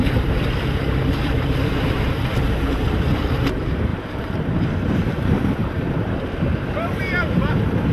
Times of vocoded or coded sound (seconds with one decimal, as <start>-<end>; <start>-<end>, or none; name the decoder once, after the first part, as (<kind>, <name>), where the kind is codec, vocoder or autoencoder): 0.0-7.9 (vocoder, BigVGAN v2)